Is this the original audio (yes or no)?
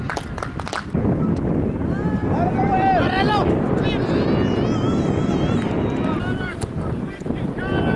yes